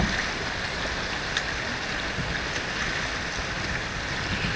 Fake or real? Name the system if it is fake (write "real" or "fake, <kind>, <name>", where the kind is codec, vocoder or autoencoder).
real